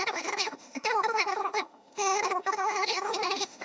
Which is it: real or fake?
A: fake